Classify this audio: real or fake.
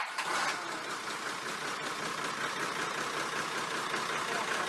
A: real